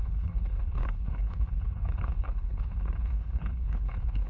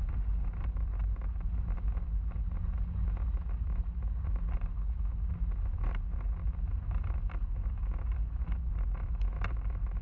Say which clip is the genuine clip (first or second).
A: second